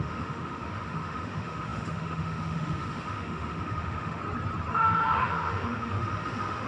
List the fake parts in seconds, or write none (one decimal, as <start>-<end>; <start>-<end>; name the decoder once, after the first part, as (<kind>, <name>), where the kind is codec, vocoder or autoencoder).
0.0-4.2 (autoencoder, DAC-VAE); 4.7-6.7